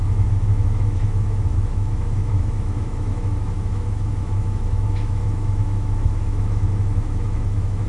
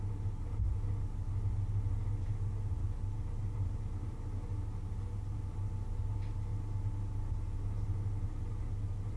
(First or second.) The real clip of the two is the second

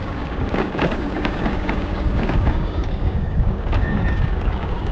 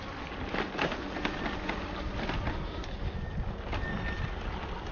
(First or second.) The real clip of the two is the second